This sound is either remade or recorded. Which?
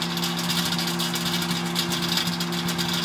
recorded